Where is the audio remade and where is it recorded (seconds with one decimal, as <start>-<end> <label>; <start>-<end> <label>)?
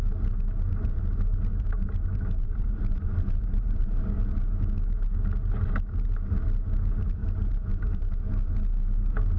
0.0-1.5 recorded; 1.5-4.0 remade; 4.0-7.2 recorded; 7.2-8.1 remade; 8.1-9.4 recorded